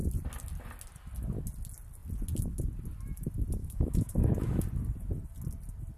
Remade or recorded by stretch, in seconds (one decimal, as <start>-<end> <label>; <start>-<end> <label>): 0.0-3.6 recorded; 3.6-4.6 remade; 4.6-6.0 recorded